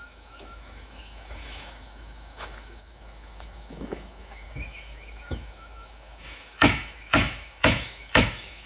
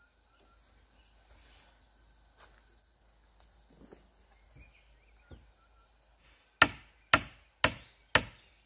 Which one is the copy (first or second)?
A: first